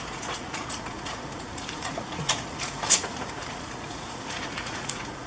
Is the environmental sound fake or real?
fake